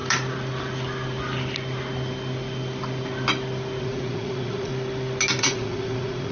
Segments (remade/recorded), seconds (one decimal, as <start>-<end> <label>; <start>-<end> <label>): 0.0-3.8 recorded; 3.8-4.7 remade; 4.7-5.4 recorded; 5.4-6.3 remade